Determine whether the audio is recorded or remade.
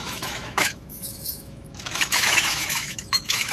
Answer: remade